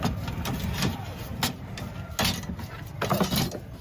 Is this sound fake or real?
real